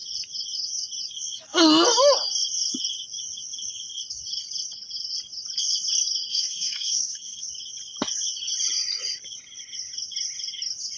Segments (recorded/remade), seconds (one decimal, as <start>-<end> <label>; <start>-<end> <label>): 0.0-6.3 recorded; 6.3-7.5 remade; 7.5-11.0 recorded